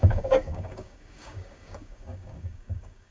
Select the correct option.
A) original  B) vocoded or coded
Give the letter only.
B